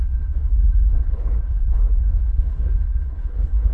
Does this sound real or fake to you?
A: fake